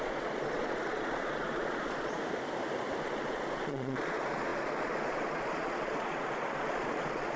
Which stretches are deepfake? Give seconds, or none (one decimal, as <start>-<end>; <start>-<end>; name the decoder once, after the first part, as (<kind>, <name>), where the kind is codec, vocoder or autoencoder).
0.0-2.2 (vocoder, Vocos); 3.0-7.4